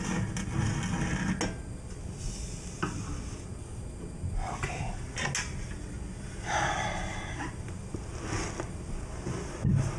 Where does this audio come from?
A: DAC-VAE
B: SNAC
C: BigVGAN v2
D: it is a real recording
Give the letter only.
D